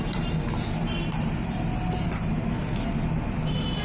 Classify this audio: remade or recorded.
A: recorded